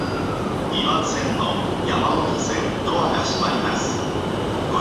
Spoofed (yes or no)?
yes